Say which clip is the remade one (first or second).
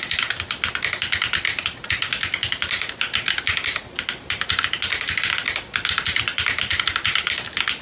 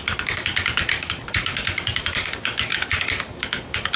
second